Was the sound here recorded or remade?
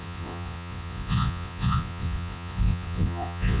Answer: remade